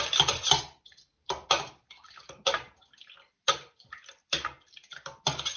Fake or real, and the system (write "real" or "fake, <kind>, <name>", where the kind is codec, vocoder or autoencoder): real